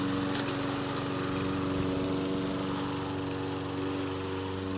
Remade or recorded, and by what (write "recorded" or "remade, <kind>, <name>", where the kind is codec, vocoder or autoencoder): recorded